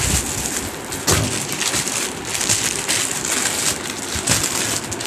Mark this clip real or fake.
real